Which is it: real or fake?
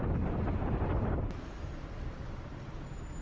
real